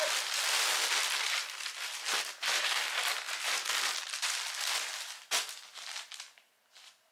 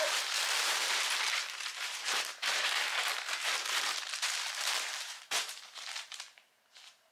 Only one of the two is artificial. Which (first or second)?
second